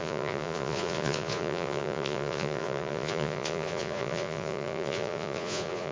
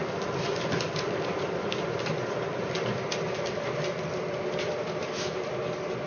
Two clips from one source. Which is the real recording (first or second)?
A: second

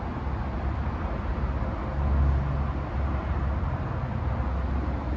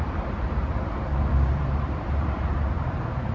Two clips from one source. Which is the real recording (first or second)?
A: first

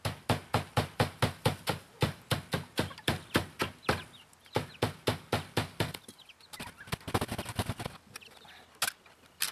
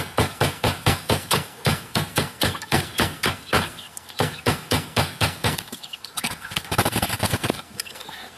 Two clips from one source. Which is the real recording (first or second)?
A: first